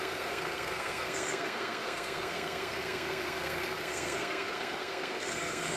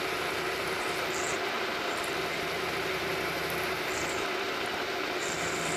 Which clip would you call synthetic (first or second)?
first